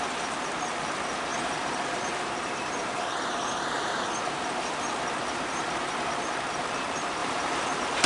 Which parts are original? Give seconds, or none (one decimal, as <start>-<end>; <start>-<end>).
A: 0.0-1.3; 4.1-5.2; 5.9-7.2